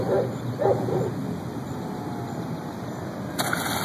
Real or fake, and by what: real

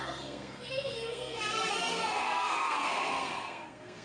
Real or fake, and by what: fake, codec, SNAC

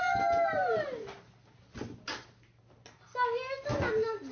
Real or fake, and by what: real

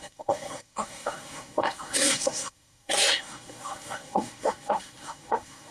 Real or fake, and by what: fake, codec, SNAC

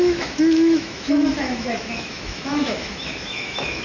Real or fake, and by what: fake, autoencoder, DAC-VAE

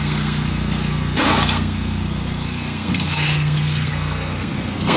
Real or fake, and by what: fake, codec, SNAC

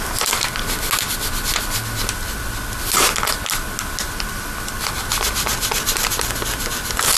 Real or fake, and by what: real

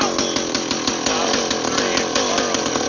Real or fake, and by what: real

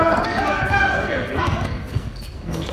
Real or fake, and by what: fake, codec, SNAC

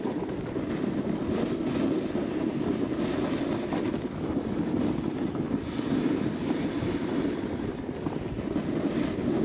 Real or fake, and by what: real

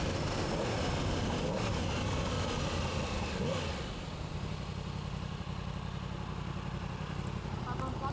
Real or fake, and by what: real